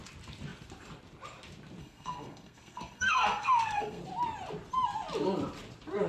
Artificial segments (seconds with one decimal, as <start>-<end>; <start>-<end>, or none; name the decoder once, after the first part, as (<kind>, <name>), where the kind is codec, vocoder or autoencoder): 1.8-4.0 (codec, SNAC)